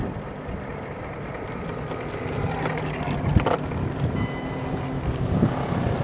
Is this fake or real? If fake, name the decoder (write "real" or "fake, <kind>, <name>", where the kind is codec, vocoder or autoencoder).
real